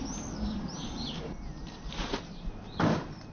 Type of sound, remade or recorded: remade